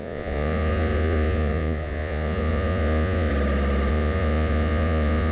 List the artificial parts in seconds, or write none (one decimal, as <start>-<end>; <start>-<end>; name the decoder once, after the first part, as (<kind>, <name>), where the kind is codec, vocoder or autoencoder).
0.0-3.3 (vocoder, Vocos); 3.9-5.3